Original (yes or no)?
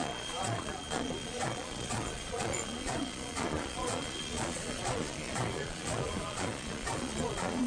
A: no